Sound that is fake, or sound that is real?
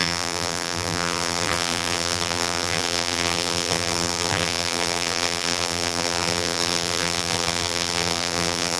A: fake